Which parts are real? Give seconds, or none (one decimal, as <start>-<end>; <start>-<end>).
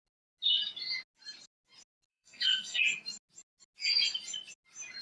0.0-2.1; 2.8-5.0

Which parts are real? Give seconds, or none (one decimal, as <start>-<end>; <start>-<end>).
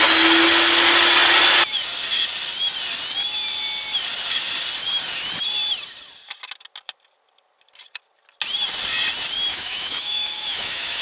0.0-9.5